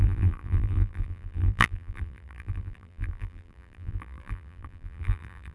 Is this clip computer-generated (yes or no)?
yes